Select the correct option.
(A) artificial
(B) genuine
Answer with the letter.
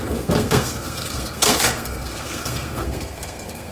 A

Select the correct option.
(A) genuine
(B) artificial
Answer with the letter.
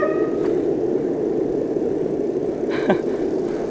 A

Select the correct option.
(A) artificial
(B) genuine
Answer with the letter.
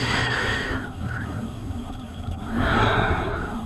A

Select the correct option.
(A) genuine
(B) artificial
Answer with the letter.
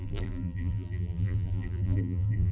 B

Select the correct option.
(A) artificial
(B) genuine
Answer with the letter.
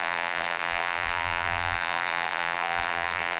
A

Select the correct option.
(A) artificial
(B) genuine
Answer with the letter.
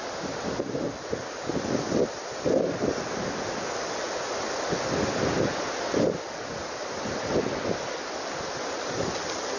B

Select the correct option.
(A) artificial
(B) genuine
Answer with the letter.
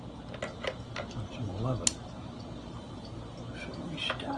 B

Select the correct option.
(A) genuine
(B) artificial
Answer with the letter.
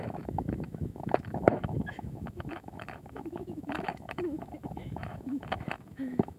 B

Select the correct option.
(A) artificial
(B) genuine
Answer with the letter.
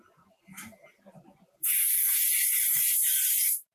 A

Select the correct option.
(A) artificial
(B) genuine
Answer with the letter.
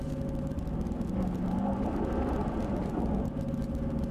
B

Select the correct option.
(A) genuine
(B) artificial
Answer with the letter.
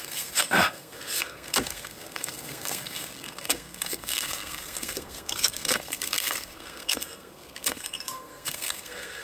B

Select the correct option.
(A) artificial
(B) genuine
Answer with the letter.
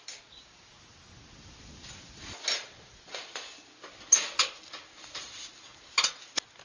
B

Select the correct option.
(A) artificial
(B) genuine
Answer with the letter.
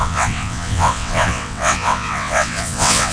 A